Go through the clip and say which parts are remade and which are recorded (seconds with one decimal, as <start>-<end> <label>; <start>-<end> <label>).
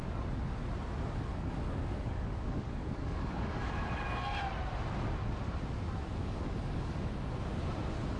0.0-1.3 recorded; 1.3-3.7 remade; 3.7-6.2 recorded; 6.2-7.1 remade; 7.1-8.2 recorded